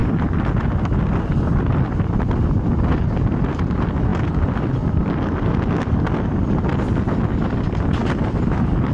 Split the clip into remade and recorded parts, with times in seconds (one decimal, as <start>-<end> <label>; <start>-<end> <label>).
0.0-8.9 recorded